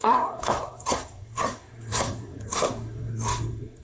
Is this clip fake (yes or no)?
yes